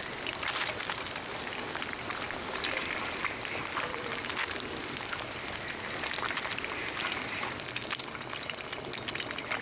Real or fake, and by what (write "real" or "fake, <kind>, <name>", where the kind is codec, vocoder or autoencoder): real